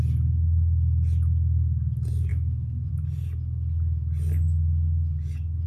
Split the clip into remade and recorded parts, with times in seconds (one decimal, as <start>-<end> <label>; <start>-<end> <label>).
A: 0.0-2.3 recorded; 2.3-2.9 remade; 2.9-5.7 recorded